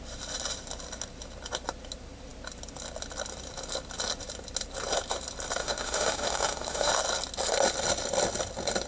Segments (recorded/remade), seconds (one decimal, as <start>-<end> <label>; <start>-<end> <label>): 0.0-5.6 recorded; 5.6-6.9 remade; 6.9-8.9 recorded

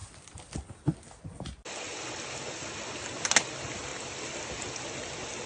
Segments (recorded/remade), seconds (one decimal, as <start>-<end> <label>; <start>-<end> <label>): 0.0-5.5 recorded

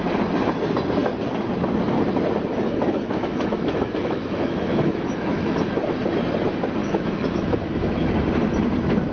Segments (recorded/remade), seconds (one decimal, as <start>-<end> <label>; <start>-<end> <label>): 0.0-2.5 recorded; 2.5-5.6 remade; 5.6-6.8 recorded; 6.8-8.1 remade; 8.1-9.1 recorded

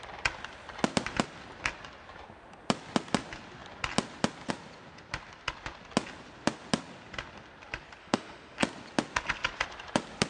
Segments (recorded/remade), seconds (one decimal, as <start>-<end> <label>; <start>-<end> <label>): 0.0-8.0 recorded; 8.0-8.6 remade; 8.6-10.3 recorded

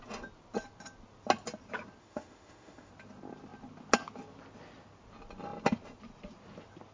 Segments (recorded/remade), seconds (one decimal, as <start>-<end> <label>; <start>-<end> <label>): 0.0-2.0 recorded; 2.0-2.9 remade; 2.9-6.9 recorded